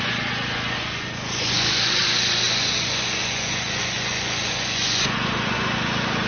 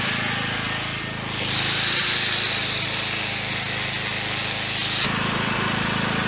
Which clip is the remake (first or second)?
first